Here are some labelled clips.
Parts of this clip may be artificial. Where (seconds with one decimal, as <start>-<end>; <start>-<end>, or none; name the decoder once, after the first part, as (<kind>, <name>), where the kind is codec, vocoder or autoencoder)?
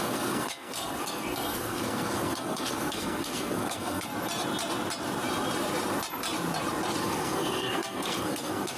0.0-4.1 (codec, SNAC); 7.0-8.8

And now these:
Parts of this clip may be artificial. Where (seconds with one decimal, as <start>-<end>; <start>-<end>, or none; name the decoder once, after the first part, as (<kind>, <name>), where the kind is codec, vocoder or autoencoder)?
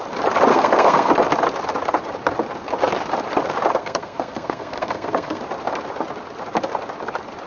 0.5-1.1 (codec, SNAC); 3.8-5.4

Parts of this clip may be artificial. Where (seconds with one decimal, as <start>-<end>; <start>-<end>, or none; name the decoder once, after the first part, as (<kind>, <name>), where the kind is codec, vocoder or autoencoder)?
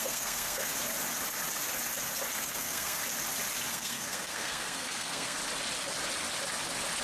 0.0-0.7 (codec, SNAC); 2.3-3.0; 3.7-5.4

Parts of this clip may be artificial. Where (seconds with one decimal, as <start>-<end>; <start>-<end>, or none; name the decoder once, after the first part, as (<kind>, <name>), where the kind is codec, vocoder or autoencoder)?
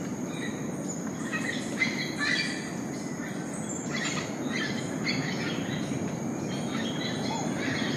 none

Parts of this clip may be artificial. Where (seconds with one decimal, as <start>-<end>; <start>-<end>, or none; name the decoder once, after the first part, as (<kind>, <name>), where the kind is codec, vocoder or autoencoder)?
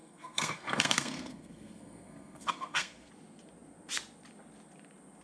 0.0-3.1 (codec, SNAC)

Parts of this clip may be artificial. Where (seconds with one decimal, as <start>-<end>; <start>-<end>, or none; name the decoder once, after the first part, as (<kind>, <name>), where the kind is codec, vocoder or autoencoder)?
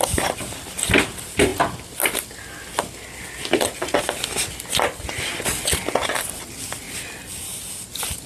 none